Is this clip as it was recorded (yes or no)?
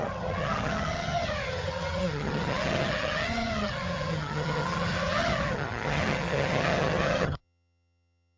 no